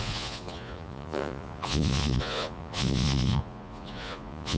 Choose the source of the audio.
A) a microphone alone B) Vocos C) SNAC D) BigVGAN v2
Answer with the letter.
B